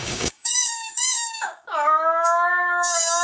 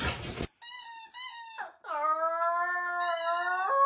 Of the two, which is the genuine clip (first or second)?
second